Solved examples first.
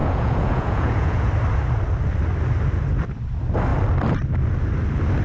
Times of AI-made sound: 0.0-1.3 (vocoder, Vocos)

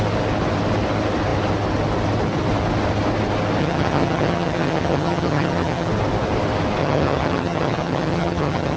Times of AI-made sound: 3.6-5.9 (vocoder, HiFi-GAN); 6.8-8.8

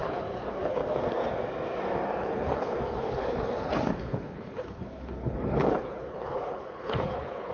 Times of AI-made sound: 0.0-0.8 (codec, HILCodec); 2.2-7.5

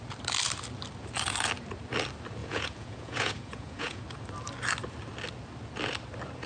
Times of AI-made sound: 2.4-4.0 (vocoder, Vocos)

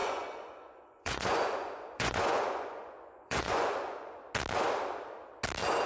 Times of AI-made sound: 0.0-4.2 (vocoder, Vocos)